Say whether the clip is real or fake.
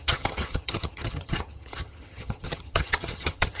fake